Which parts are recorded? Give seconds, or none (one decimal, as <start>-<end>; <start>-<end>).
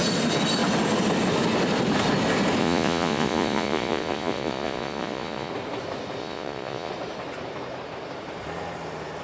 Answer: 0.0-2.6; 5.5-6.2; 6.9-9.2